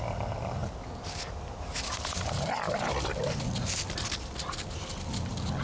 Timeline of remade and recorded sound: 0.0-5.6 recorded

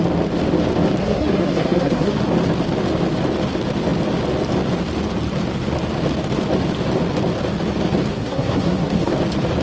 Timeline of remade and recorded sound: 0.0-1.0 recorded; 1.0-2.2 remade; 2.2-8.1 recorded; 8.1-9.1 remade; 9.1-9.6 recorded

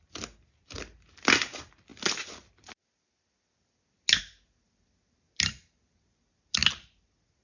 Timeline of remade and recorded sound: 0.0-7.4 recorded

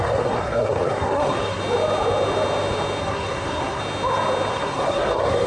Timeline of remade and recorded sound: 0.0-1.6 remade; 1.6-3.0 recorded; 3.0-3.8 remade; 3.8-4.5 recorded; 4.5-5.5 remade

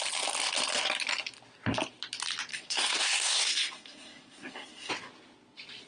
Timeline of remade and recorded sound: 0.0-2.5 recorded; 2.5-4.9 remade; 4.9-5.9 recorded